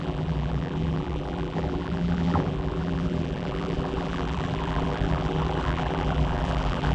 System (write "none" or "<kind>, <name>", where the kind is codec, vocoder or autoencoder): vocoder, BigVGAN v2